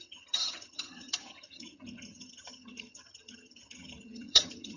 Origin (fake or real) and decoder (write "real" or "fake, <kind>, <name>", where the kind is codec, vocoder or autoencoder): fake, vocoder, HiFi-GAN